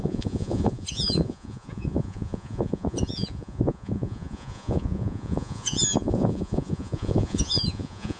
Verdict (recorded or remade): remade